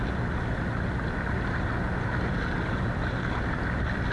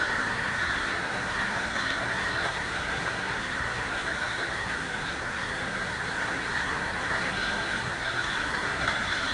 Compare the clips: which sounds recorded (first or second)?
first